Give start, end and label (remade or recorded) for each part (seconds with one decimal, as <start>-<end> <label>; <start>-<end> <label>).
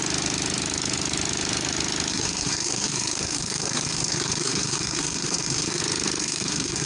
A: 0.0-2.1 recorded; 2.1-5.8 remade; 5.8-6.2 recorded; 6.2-6.9 remade